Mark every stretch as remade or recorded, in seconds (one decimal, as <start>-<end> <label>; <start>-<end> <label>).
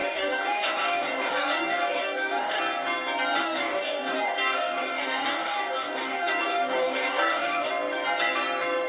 0.0-2.6 remade; 2.6-3.4 recorded; 3.4-7.7 remade; 7.7-8.9 recorded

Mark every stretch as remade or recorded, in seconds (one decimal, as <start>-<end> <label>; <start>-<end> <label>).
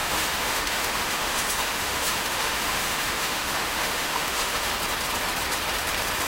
0.0-4.7 remade; 4.7-6.3 recorded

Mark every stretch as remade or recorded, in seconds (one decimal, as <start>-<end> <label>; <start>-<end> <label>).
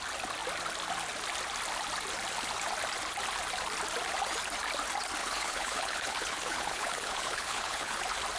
0.0-5.2 recorded; 5.2-8.0 remade; 8.0-8.4 recorded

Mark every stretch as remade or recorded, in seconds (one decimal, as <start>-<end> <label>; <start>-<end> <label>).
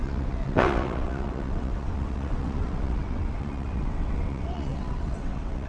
0.0-5.7 remade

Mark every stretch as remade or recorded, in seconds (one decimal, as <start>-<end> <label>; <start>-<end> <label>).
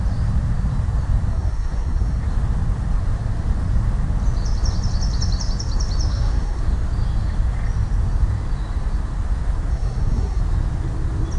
0.0-1.3 recorded; 1.3-2.2 remade; 2.2-6.1 recorded; 6.1-6.6 remade; 6.6-9.7 recorded; 9.7-10.4 remade; 10.4-11.4 recorded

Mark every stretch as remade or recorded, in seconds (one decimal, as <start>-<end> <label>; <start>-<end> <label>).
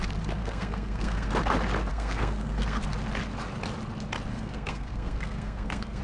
0.0-0.4 recorded; 0.4-1.3 remade; 1.3-1.9 recorded; 1.9-2.8 remade; 2.8-4.3 recorded; 4.3-6.0 remade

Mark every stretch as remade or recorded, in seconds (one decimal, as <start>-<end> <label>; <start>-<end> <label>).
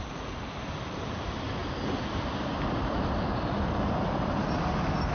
0.0-5.1 recorded